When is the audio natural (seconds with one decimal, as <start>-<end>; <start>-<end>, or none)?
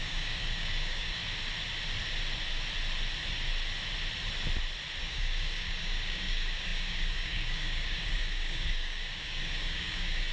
1.2-5.0